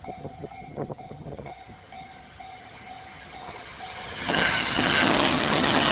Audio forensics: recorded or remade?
remade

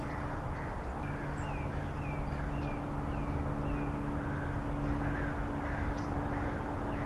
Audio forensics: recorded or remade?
recorded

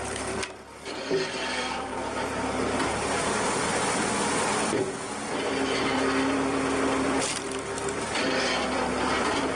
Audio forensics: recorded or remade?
remade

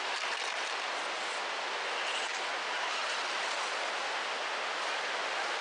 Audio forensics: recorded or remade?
recorded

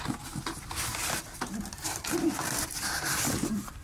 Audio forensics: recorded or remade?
remade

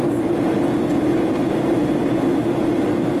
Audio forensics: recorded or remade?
recorded